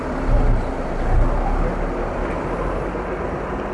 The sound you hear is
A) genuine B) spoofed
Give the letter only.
A